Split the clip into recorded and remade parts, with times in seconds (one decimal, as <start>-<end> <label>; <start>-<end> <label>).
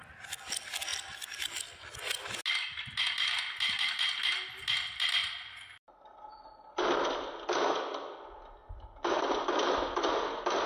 0.0-5.2 recorded; 5.2-6.2 remade; 6.2-8.6 recorded; 8.6-9.2 remade; 9.2-10.7 recorded